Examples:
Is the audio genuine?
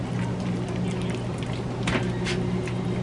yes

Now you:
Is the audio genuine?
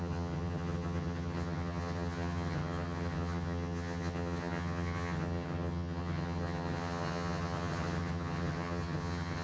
no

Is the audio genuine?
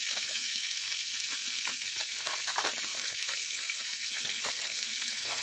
no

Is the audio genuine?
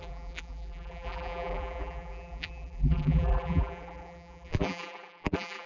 no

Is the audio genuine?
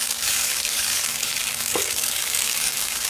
no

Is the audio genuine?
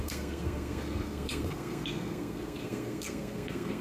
no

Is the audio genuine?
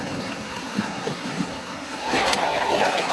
no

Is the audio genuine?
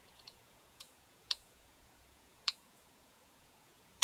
no